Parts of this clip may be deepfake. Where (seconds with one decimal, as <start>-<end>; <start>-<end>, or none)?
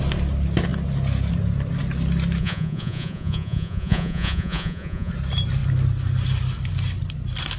2.4-5.1